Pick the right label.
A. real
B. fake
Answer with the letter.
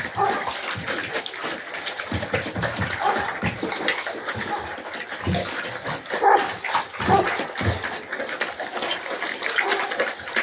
A